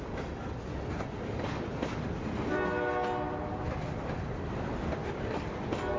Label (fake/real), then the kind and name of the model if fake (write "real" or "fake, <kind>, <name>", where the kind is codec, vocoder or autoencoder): real